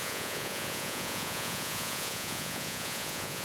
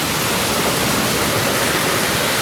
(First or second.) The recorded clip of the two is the second